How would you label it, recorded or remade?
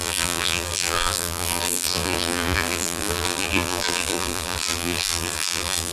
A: remade